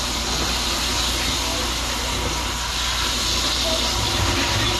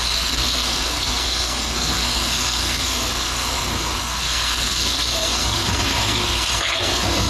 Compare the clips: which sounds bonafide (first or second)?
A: first